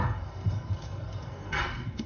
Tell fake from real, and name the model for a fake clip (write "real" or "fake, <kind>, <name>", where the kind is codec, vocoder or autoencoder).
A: fake, codec, SNAC